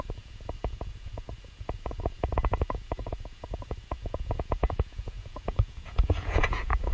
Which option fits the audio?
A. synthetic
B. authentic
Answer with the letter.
A